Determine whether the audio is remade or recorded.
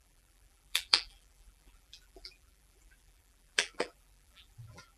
remade